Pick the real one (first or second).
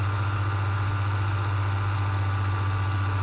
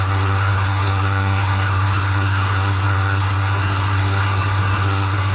first